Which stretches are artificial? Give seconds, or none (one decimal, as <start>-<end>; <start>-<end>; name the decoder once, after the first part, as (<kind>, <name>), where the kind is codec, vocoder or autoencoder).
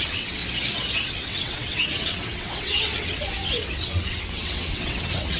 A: 0.0-0.4 (vocoder, WaveNeXt); 1.1-5.4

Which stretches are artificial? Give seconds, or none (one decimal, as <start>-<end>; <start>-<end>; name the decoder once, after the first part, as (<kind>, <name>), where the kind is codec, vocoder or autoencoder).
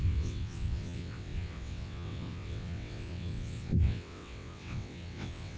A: 0.0-5.6 (vocoder, WaveNeXt)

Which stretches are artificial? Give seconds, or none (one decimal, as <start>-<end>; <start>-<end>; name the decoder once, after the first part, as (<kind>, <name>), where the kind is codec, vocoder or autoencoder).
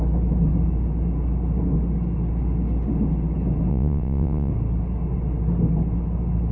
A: 3.7-4.5 (vocoder, WaveNeXt)